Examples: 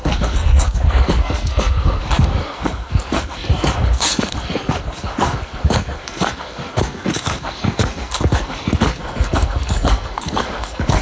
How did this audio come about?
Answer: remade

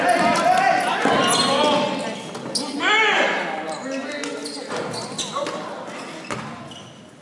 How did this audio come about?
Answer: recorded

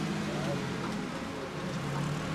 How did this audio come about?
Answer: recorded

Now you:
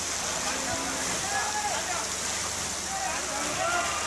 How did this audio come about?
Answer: recorded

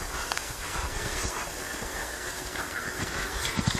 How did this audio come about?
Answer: remade